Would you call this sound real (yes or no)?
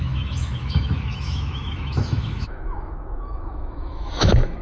no